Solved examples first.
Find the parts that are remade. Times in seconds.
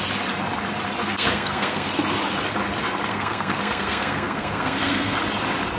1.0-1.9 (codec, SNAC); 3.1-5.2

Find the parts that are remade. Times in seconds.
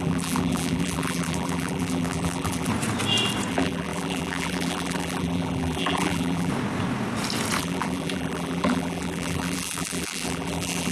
0.0-2.7 (vocoder, BigVGAN v2); 3.5-6.5; 7.6-10.9